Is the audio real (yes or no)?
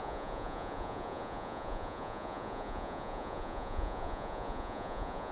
no